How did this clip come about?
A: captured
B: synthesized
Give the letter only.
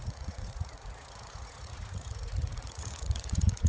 B